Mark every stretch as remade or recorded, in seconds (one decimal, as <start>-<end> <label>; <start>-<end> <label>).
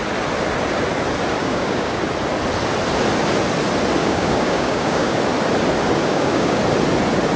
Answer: 0.0-1.4 recorded; 1.4-2.0 remade; 2.0-4.0 recorded; 4.0-5.2 remade; 5.2-6.1 recorded; 6.1-6.6 remade; 6.6-7.4 recorded